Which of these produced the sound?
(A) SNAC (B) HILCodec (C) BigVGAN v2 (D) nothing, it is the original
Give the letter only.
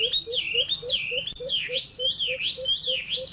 D